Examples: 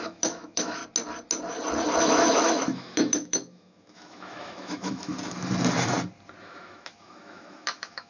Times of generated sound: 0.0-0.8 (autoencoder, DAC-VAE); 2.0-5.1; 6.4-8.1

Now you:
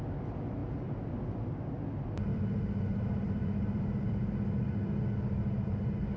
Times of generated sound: 2.3-4.3 (vocoder, BigVGAN v2)

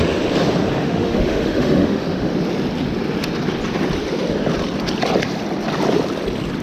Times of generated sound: 0.8-2.3 (autoencoder, DAC-VAE)

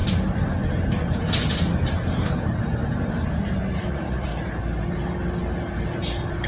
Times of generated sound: 3.9-4.3 (vocoder, Vocos)